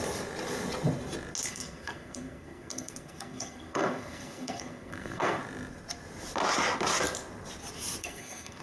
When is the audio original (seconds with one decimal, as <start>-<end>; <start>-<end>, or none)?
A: 0.0-1.5; 5.4-8.0